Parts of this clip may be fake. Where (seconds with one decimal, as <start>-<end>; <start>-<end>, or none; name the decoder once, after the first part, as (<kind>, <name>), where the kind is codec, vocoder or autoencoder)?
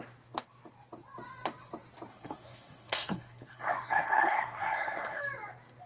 2.1-5.2 (codec, SNAC)